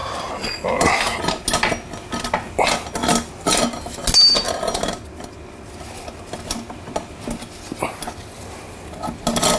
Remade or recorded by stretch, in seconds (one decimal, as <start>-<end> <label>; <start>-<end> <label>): 0.0-9.6 recorded